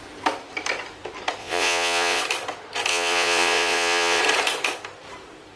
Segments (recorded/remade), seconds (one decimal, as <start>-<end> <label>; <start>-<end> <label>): 0.0-1.4 recorded; 1.4-2.2 remade; 2.2-2.9 recorded; 2.9-4.2 remade; 4.2-5.6 recorded